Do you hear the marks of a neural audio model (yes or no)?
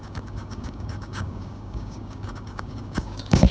yes